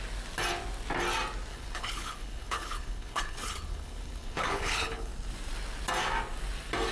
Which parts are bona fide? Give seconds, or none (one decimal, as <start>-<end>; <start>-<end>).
0.0-1.5; 5.1-6.9